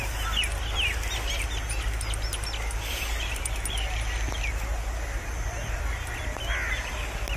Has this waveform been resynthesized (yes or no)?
no